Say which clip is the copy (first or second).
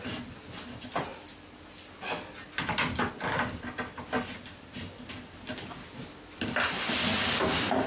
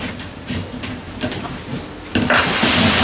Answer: second